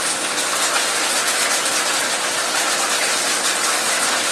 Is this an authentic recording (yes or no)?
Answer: no